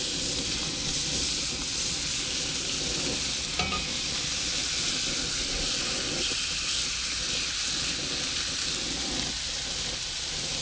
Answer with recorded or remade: recorded